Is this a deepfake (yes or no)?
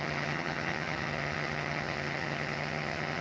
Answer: yes